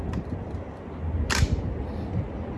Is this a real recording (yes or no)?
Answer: yes